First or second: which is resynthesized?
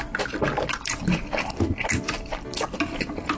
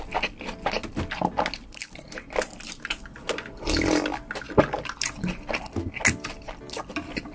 first